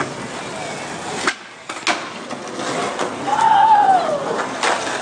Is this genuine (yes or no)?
yes